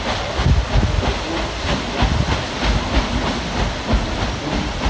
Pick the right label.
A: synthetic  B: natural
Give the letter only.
B